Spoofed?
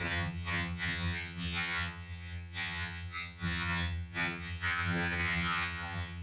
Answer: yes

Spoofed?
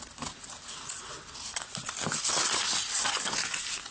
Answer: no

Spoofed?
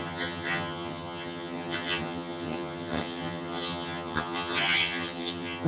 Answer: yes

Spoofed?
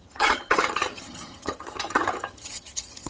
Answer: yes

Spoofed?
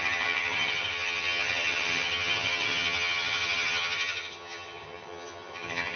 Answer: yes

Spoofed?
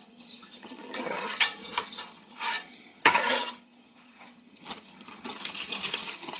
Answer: yes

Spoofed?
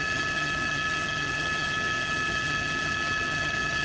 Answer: yes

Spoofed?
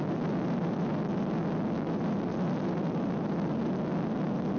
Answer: no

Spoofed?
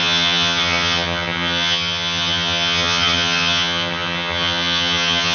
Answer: yes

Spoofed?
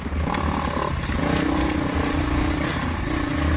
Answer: no